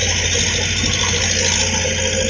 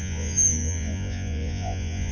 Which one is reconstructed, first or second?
second